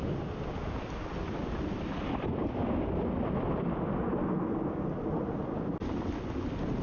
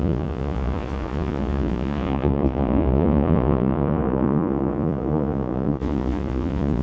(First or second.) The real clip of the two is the first